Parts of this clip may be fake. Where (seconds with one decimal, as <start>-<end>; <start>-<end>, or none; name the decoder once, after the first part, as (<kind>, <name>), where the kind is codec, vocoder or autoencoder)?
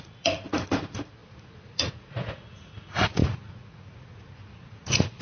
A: 0.0-5.2 (vocoder, Vocos)